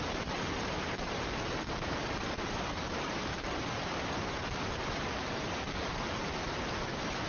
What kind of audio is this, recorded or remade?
remade